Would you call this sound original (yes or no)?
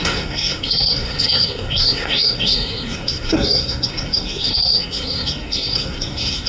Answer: no